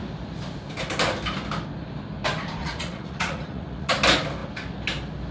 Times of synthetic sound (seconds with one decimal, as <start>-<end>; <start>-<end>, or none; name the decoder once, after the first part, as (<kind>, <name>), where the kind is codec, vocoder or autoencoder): 2.6-3.9 (vocoder, Vocos)